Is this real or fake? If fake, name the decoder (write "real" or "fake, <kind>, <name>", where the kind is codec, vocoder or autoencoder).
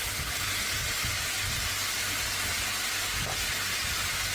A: real